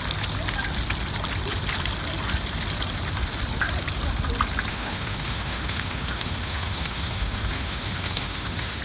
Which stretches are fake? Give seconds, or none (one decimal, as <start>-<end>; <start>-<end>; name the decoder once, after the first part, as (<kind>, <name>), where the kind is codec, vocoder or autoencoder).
4.7-8.8 (autoencoder, DAC-VAE)